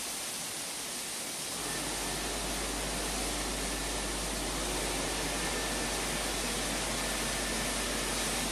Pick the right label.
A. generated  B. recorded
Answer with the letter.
B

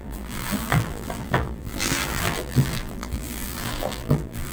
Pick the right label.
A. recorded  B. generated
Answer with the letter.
B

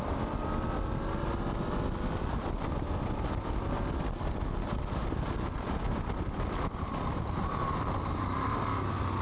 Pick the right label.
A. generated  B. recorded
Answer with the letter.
A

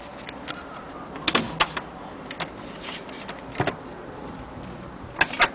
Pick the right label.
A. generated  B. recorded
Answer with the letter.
B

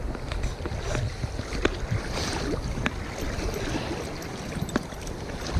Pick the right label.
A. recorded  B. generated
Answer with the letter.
A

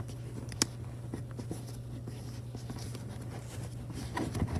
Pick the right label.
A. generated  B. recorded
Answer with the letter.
B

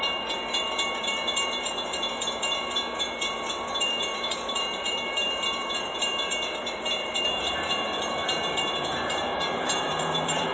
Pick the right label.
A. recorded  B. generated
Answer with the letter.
B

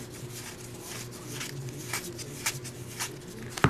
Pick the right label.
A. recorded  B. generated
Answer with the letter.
A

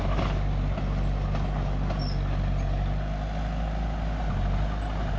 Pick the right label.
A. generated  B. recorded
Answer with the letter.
B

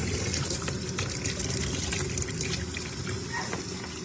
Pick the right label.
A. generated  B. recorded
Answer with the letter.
B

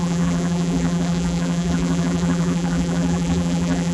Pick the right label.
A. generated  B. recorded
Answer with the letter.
A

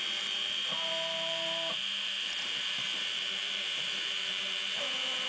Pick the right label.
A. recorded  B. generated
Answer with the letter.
B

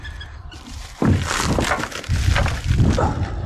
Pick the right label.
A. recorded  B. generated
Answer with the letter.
A